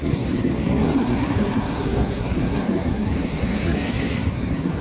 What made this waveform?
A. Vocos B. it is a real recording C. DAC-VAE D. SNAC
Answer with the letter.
D